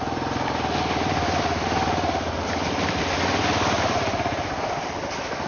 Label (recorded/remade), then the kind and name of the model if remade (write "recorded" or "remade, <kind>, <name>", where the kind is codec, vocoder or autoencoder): recorded